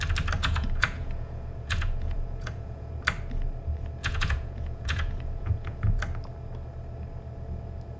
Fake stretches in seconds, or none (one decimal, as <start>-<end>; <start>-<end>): 0.4-2.9; 4.0-6.0